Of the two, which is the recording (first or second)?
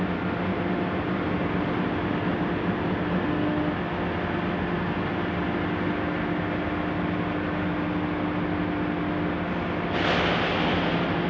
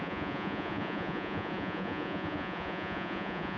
first